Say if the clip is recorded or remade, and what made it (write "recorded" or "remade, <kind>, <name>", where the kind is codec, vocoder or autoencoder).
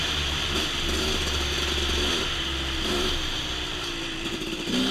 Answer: recorded